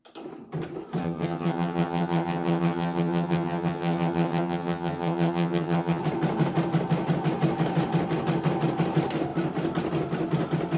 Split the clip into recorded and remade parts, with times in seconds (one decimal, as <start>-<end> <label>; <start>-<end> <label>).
0.0-1.0 recorded; 1.0-6.0 remade; 6.0-10.8 recorded